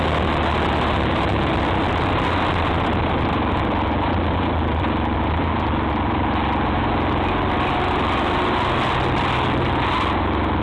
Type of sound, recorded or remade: recorded